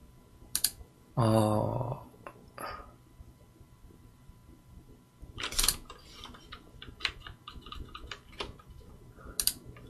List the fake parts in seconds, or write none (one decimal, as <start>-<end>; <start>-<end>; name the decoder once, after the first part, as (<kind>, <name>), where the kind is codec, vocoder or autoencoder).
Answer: none